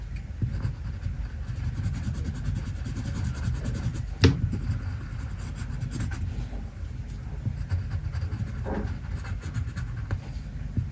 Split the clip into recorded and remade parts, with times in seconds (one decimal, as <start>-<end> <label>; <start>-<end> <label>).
0.0-10.9 recorded